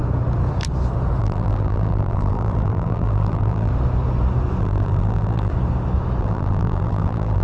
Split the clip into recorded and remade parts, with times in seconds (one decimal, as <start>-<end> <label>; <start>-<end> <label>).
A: 0.0-1.2 recorded; 1.2-3.7 remade; 3.7-4.6 recorded; 4.6-5.5 remade; 5.5-6.2 recorded; 6.2-7.4 remade